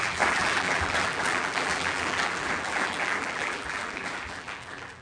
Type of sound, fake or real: fake